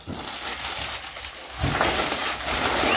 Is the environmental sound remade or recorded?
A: recorded